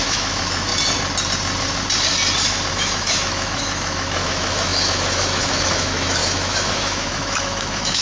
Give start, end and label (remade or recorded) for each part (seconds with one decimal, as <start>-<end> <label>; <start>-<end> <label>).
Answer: 0.0-0.7 remade; 0.7-2.7 recorded; 2.7-8.0 remade